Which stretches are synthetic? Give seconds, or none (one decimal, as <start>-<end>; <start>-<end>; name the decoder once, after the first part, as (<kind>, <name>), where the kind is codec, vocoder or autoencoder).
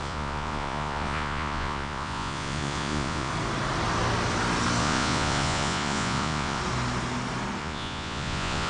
0.0-3.3 (vocoder, Vocos); 4.8-6.6; 7.6-8.7